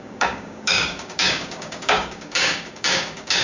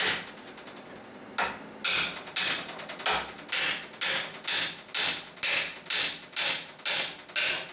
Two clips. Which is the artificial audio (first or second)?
first